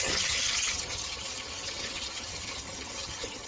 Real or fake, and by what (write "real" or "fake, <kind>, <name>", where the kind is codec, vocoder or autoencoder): fake, vocoder, HiFi-GAN